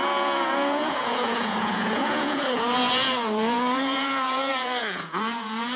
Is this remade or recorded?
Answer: remade